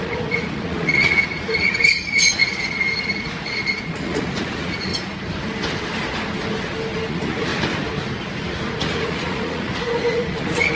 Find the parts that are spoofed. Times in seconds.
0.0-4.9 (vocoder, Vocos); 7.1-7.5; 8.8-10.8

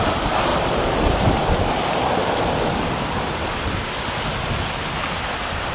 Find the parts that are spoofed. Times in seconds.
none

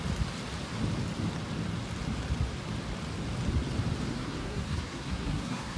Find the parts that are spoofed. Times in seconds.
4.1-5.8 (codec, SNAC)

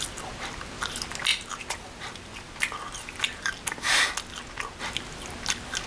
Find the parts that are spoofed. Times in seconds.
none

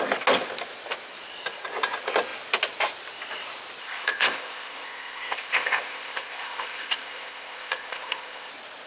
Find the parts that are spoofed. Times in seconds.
3.8-8.5 (codec, ZipCodec)